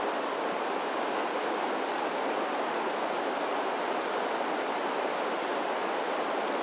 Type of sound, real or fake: real